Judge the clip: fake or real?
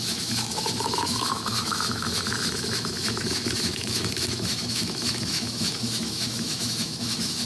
fake